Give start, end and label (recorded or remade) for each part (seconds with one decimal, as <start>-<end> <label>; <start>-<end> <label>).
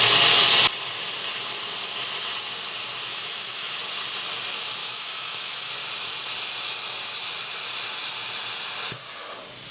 0.0-3.1 recorded; 3.1-3.8 remade; 3.8-4.8 recorded; 4.8-5.7 remade; 5.7-9.7 recorded